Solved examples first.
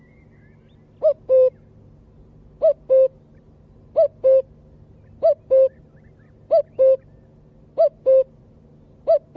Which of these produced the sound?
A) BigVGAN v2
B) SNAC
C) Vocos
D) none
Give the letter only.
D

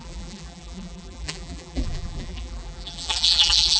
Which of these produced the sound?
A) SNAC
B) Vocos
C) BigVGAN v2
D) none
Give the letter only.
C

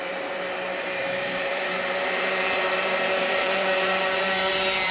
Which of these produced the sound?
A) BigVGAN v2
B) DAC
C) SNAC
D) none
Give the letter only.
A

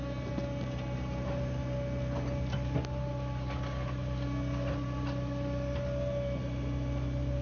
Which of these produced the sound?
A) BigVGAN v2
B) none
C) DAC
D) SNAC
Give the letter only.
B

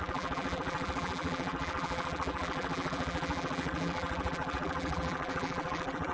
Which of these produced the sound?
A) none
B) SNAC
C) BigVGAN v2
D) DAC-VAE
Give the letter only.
C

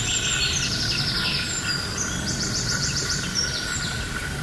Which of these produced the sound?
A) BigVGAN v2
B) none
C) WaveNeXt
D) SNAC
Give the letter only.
A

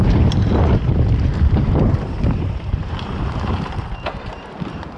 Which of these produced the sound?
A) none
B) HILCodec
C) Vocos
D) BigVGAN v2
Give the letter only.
D